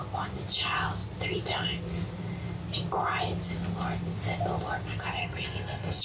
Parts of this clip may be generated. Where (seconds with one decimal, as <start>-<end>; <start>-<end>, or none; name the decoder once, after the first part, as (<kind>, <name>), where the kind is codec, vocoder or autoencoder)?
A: 5.2-6.0 (codec, SNAC)